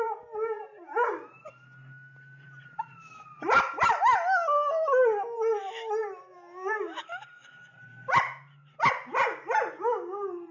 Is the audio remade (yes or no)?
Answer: no